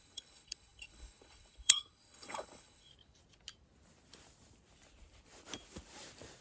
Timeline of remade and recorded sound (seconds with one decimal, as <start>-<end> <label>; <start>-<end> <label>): 0.0-2.9 remade; 2.9-6.4 recorded